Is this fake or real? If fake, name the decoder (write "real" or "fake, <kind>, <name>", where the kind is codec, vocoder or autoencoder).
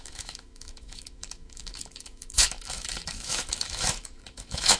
fake, autoencoder, DAC-VAE